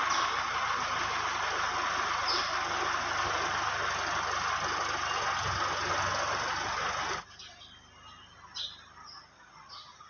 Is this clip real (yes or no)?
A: yes